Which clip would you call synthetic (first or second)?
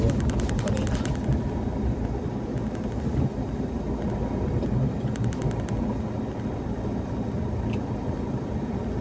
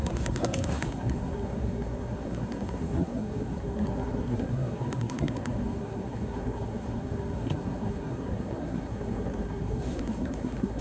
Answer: second